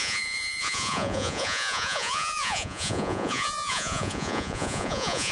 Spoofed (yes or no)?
yes